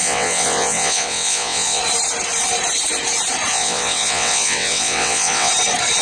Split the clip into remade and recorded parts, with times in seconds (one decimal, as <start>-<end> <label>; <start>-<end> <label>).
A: 0.0-1.8 remade; 1.8-3.5 recorded; 3.5-5.5 remade; 5.5-6.0 recorded

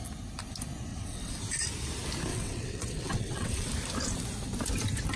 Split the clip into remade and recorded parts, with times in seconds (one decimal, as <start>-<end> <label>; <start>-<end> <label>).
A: 0.0-0.9 recorded; 0.9-1.4 remade; 1.4-2.3 recorded; 2.3-3.7 remade; 3.7-5.2 recorded

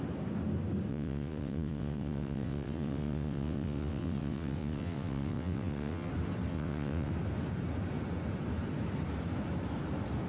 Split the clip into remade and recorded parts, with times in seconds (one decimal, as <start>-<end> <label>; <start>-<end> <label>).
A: 0.0-0.9 recorded; 0.9-6.1 remade; 6.1-6.5 recorded; 6.5-7.1 remade; 7.1-10.3 recorded

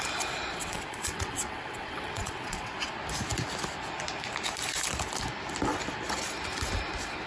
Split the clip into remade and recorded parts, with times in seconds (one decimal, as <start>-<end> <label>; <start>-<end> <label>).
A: 0.0-0.5 recorded; 0.5-2.9 remade; 2.9-7.3 recorded

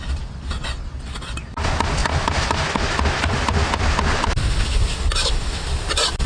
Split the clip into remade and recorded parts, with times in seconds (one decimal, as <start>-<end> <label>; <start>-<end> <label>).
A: 0.0-6.3 recorded

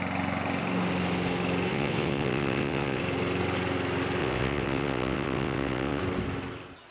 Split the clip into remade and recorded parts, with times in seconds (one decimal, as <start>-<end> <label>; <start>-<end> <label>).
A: 0.0-1.7 recorded; 1.7-3.0 remade; 3.0-4.2 recorded; 4.2-6.0 remade; 6.0-6.9 recorded

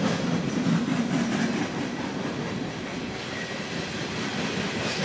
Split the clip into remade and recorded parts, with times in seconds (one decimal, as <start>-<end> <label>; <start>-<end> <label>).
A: 0.0-5.0 recorded